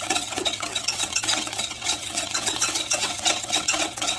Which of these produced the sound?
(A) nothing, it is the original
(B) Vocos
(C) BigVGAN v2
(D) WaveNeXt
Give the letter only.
D